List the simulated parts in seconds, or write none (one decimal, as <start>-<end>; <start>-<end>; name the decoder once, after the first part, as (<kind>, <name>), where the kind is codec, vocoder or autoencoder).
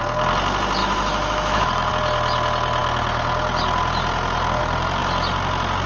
0.8-1.9 (autoencoder, DAC-VAE)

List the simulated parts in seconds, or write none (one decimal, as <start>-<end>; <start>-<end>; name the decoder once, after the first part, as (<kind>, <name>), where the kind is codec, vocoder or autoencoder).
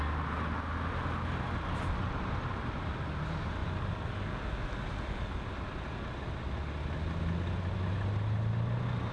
none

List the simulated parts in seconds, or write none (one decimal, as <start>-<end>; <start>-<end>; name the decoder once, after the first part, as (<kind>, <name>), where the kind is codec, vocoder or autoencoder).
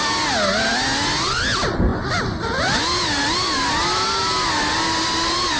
none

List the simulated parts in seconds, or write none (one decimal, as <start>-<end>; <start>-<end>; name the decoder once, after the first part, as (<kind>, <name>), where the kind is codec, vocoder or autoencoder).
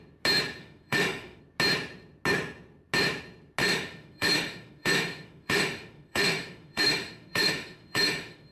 0.6-1.4 (autoencoder, DAC-VAE); 3.6-8.5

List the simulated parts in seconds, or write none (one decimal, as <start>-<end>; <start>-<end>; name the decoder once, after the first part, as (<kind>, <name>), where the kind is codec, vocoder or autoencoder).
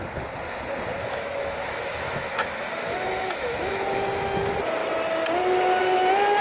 1.0-3.8 (autoencoder, DAC-VAE)